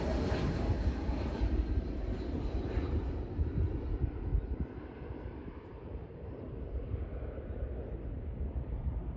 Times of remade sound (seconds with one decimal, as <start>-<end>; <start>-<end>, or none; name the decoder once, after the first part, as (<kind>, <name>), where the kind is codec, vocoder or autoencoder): 4.3-6.7 (vocoder, BigVGAN v2)